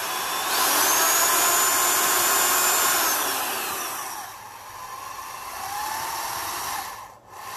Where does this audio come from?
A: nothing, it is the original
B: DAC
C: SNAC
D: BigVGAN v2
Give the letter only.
A